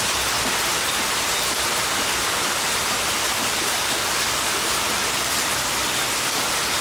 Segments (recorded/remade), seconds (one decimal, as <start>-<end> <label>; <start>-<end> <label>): 0.0-2.2 recorded; 2.2-2.7 remade; 2.7-3.4 recorded; 3.4-4.7 remade; 4.7-6.8 recorded